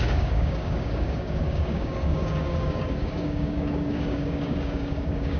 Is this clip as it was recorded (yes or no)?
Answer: no